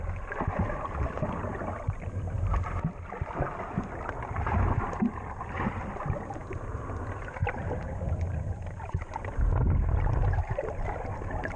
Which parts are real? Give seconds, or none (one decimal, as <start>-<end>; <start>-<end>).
0.0-11.6